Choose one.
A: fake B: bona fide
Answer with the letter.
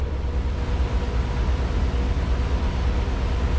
B